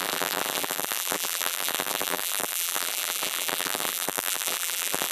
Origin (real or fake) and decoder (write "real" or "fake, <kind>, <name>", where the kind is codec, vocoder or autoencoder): fake, vocoder, BigVGAN v2